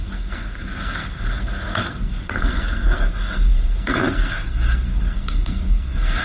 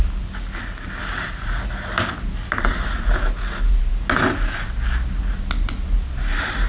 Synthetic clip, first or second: first